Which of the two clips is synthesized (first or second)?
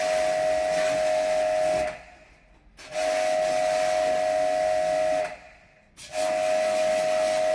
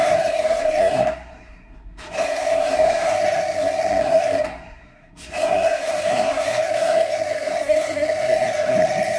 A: second